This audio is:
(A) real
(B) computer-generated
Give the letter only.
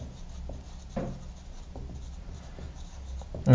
A